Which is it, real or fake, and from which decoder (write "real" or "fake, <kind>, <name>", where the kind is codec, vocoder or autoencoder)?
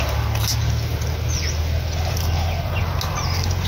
real